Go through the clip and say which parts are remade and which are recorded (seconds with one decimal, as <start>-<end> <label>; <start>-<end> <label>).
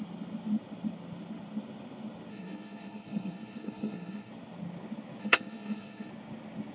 0.0-2.3 recorded; 2.3-4.3 remade; 4.3-5.2 recorded; 5.2-6.1 remade; 6.1-6.7 recorded